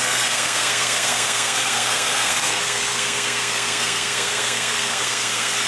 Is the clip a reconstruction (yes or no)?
yes